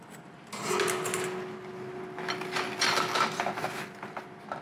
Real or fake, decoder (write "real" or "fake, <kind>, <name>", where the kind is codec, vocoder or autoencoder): real